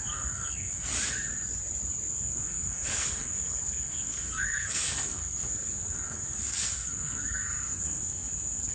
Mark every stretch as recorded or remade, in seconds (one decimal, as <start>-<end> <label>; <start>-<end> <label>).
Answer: 0.0-0.9 remade; 0.9-2.1 recorded; 2.1-8.7 remade